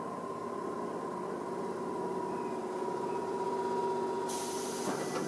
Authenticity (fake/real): real